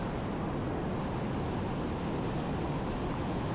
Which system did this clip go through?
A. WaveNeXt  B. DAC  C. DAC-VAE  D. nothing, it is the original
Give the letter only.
D